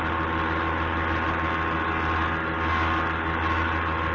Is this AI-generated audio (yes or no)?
no